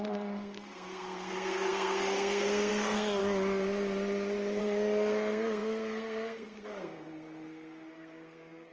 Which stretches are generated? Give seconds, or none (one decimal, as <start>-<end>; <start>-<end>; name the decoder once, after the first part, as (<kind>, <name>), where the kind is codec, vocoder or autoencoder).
0.0-3.2 (codec, SNAC); 4.6-8.7